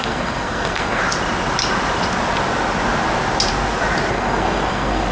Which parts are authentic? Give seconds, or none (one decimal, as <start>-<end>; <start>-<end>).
1.0-4.1